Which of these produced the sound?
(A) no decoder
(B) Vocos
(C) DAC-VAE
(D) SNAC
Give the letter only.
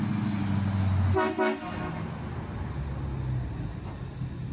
A